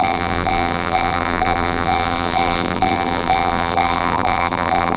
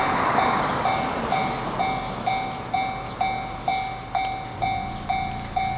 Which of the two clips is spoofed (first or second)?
first